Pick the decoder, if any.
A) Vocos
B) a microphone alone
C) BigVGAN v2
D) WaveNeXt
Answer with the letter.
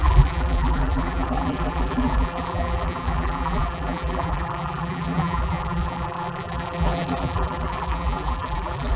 C